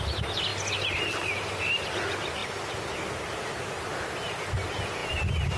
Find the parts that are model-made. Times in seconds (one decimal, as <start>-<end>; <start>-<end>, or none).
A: none